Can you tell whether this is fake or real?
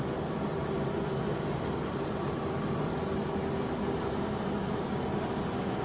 real